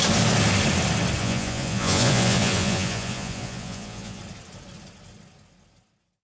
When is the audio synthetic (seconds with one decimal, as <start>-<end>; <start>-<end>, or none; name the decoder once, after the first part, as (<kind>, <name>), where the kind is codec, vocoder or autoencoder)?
1.2-4.2 (vocoder, Vocos)